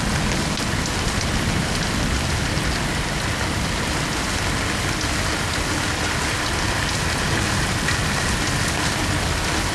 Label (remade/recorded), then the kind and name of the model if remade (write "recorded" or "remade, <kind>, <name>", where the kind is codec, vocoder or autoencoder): recorded